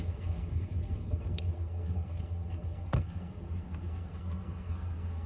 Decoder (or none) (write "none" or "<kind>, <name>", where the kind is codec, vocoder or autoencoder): codec, SNAC